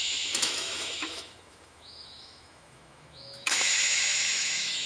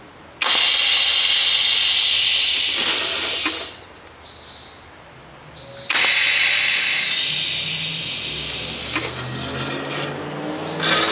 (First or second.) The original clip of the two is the second